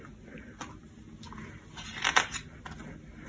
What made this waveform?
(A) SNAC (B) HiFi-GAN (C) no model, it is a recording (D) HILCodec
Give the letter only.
C